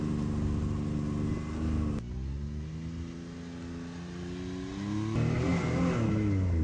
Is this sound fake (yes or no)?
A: no